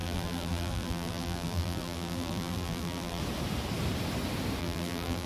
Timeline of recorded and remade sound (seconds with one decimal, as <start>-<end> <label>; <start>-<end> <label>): 0.0-3.2 remade; 3.2-4.6 recorded; 4.6-5.3 remade